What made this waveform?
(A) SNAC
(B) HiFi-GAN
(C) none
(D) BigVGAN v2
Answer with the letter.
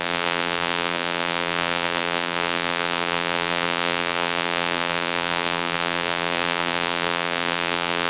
D